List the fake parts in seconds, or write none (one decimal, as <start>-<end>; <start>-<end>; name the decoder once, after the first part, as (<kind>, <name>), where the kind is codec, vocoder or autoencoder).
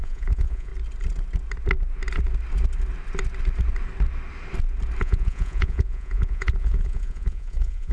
0.0-0.7 (vocoder, Vocos); 5.0-7.9